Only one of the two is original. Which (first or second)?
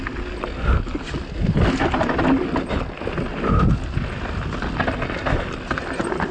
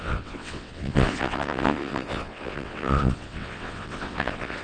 first